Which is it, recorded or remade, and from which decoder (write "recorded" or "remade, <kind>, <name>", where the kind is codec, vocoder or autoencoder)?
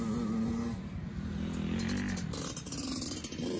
recorded